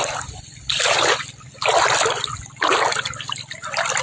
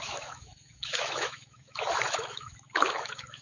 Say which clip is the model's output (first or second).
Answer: second